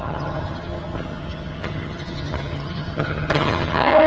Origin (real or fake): fake